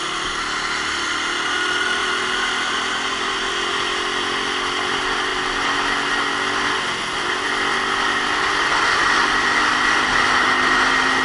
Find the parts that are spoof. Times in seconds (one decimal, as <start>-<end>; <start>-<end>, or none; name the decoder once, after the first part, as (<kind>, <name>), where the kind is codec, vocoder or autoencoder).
none